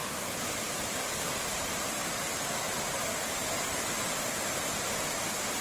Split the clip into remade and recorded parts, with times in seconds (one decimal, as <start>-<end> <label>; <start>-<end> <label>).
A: 0.0-2.0 recorded; 2.0-4.3 remade; 4.3-5.6 recorded